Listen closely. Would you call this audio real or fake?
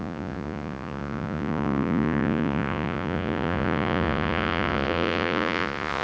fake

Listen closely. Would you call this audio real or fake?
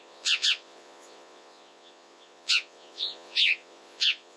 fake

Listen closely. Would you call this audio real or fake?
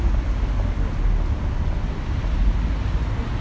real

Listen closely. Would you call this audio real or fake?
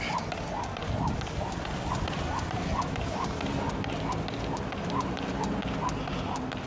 real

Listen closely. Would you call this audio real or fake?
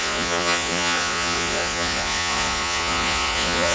fake